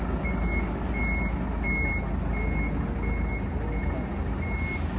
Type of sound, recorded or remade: recorded